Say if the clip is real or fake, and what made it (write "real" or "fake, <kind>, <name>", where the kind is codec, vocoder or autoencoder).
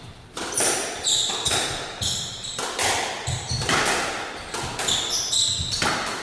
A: real